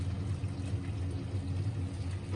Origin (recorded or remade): recorded